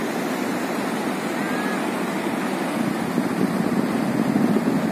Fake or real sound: real